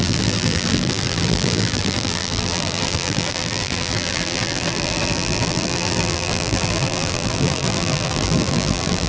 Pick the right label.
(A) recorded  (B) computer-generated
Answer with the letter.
B